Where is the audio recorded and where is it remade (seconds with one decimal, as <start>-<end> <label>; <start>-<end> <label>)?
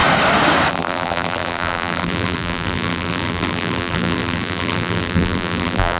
0.0-0.7 recorded; 0.7-6.0 remade